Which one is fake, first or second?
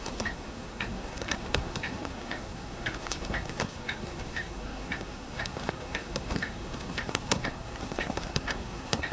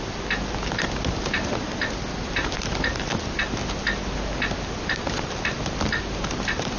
first